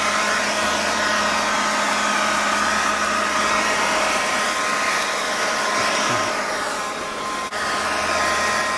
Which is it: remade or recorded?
recorded